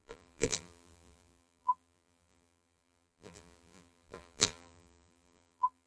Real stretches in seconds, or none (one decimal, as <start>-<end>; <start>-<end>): none